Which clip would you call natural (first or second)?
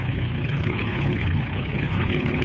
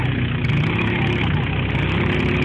second